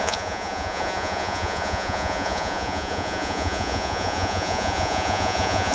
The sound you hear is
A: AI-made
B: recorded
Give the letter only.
A